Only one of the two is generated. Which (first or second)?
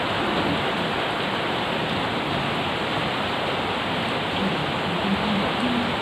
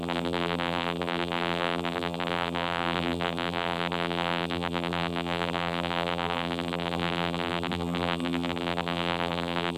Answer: second